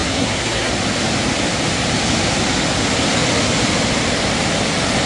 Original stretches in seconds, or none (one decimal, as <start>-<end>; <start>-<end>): 0.7-5.1